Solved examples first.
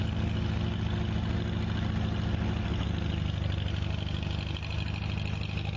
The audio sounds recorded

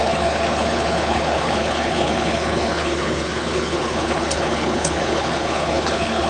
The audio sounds remade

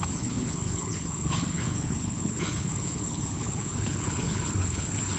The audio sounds remade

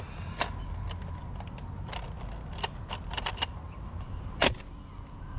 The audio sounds recorded